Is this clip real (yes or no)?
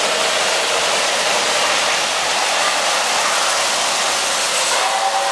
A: yes